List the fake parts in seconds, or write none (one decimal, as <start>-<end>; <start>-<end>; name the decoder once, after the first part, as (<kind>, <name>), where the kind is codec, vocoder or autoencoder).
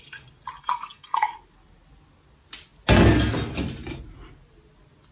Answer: 0.6-1.3 (codec, SNAC)